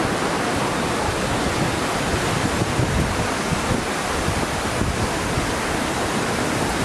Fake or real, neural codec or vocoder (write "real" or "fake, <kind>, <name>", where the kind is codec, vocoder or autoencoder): fake, vocoder, BigVGAN v2